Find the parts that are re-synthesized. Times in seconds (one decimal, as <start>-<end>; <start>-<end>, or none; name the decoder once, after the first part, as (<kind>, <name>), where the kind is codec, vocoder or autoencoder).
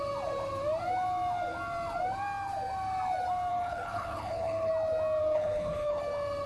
3.5-4.7 (codec, HILCodec); 5.2-6.0